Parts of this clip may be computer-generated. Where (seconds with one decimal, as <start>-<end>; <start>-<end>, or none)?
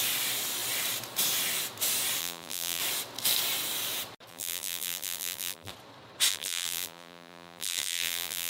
2.2-2.8; 4.3-5.7; 6.3-8.5